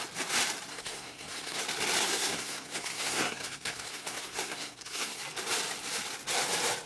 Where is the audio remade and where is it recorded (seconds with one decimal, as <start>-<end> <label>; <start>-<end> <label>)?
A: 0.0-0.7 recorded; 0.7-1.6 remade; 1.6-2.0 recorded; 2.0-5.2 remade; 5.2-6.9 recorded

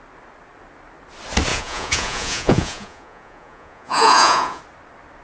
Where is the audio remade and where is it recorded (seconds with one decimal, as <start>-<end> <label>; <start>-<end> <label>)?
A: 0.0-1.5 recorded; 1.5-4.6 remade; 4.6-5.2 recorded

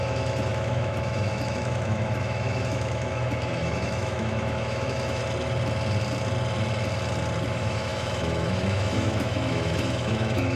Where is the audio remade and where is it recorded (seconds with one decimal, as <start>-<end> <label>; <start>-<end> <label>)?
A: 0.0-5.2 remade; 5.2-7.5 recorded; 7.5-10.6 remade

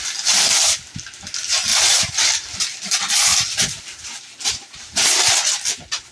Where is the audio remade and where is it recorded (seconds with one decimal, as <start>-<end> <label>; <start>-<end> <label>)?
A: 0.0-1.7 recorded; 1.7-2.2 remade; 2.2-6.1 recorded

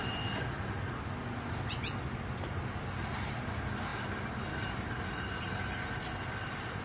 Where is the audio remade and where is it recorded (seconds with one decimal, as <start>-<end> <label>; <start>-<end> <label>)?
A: 0.0-6.8 recorded

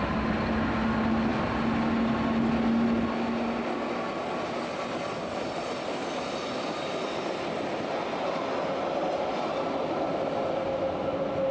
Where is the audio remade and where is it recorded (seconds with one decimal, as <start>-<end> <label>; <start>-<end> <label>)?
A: 0.0-11.5 recorded